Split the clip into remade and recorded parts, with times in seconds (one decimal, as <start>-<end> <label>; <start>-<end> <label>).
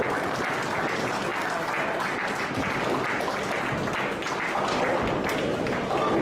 0.0-6.2 recorded